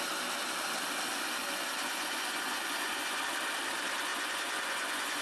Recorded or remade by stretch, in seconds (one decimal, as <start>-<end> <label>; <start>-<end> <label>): 0.0-1.4 recorded; 1.4-3.2 remade; 3.2-4.1 recorded; 4.1-5.2 remade